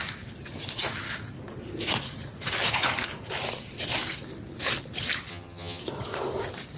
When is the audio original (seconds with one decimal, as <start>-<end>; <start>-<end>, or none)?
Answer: 0.0-5.3; 5.8-6.8